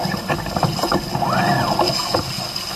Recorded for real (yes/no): yes